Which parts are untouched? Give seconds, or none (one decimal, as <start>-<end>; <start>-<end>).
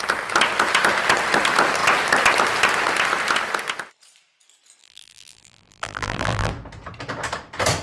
0.0-4.8; 6.5-7.8